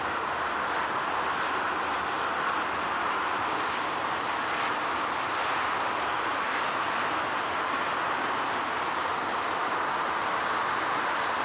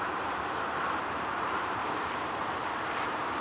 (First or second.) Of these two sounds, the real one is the first